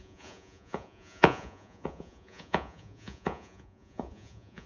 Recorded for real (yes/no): no